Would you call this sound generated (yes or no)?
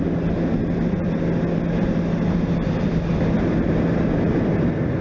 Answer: no